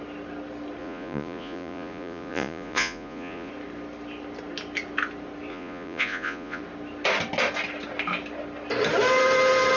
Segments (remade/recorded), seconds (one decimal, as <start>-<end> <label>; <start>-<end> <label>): 0.0-0.8 recorded; 0.8-3.5 remade; 3.5-5.5 recorded; 5.5-6.6 remade; 6.6-9.8 recorded